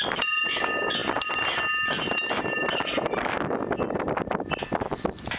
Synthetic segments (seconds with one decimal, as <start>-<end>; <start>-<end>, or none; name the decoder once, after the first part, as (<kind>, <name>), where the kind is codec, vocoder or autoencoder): none